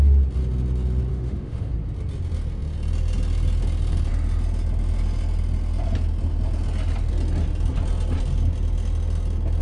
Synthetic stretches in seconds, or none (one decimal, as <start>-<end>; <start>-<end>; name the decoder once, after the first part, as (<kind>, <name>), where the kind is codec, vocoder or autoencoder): 1.1-1.7 (autoencoder, DAC-VAE)